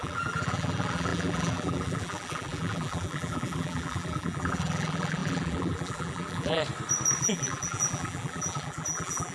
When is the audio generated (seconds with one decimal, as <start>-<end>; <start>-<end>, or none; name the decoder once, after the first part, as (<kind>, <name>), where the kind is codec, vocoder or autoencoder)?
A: 0.0-6.6 (vocoder, BigVGAN v2); 7.2-9.3